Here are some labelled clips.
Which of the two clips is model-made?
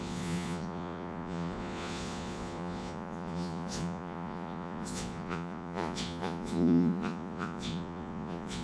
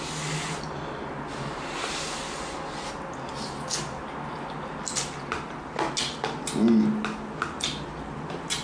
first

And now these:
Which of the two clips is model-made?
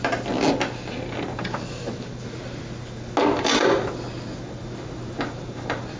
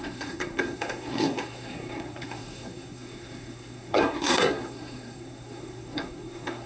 second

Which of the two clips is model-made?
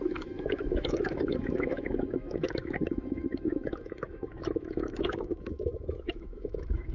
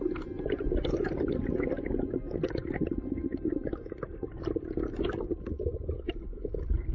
first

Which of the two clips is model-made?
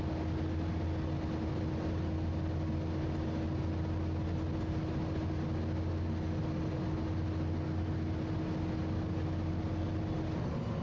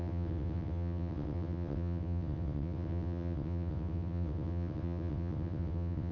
second